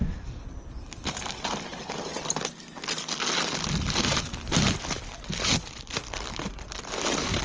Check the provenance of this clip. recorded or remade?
recorded